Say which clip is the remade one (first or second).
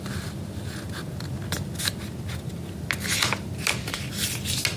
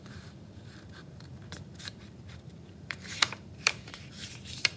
second